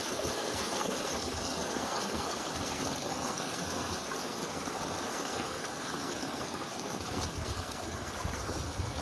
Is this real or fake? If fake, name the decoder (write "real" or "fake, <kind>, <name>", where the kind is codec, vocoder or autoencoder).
fake, codec, SNAC